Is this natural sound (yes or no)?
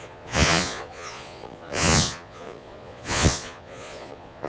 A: no